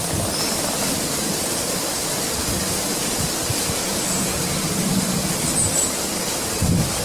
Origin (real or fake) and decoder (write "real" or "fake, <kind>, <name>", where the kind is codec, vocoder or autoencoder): fake, vocoder, BigVGAN v2